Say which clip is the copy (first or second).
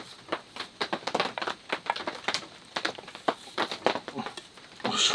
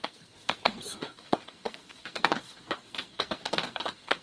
second